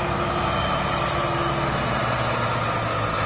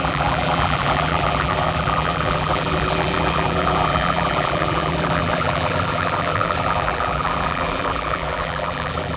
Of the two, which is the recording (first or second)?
first